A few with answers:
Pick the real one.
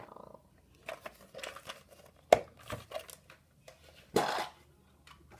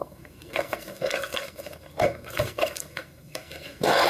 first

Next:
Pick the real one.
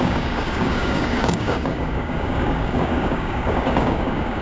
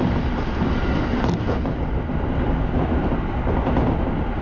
second